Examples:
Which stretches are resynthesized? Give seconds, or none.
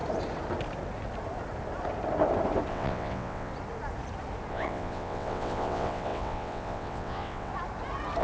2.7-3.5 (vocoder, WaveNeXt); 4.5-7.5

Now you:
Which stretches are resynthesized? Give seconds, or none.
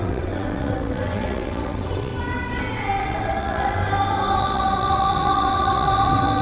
0.0-2.1 (vocoder, WaveNeXt); 3.0-3.8; 4.4-6.4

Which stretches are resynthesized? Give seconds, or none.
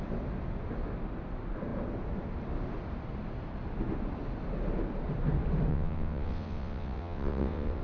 5.7-7.8 (vocoder, WaveNeXt)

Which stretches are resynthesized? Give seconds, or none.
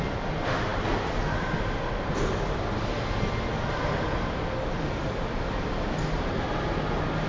none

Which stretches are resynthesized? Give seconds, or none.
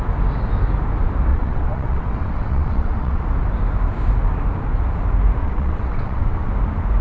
1.3-3.2 (vocoder, WaveNeXt); 5.4-6.5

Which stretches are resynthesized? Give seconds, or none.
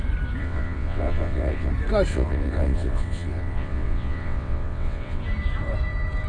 0.4-1.7 (vocoder, WaveNeXt); 2.1-5.2